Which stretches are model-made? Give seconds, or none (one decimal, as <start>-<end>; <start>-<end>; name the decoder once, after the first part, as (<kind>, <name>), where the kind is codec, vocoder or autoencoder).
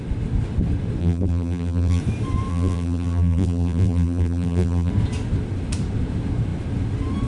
1.0-2.0 (vocoder, BigVGAN v2); 2.5-4.9